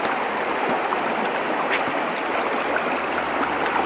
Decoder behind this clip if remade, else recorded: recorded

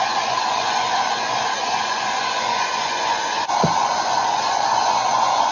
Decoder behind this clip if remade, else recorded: remade, vocoder, Vocos